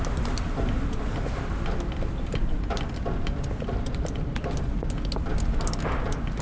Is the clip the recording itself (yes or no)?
yes